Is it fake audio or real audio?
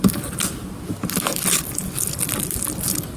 real